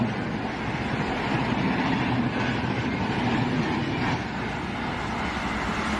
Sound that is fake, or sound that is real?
real